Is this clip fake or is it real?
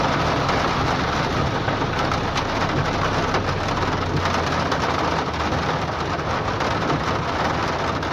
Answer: real